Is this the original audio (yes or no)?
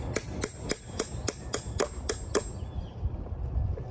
yes